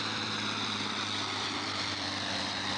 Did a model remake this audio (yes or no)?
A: yes